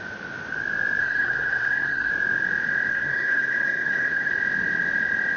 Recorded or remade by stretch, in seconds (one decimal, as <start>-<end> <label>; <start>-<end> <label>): 0.0-1.0 recorded; 1.0-2.1 remade; 2.1-2.9 recorded; 2.9-4.3 remade; 4.3-5.4 recorded